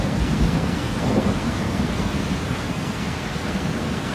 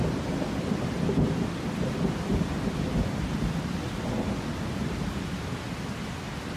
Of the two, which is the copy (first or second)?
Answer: first